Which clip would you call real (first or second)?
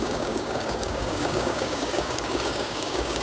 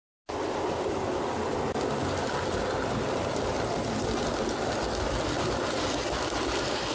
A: second